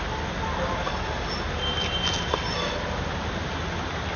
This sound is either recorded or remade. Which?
recorded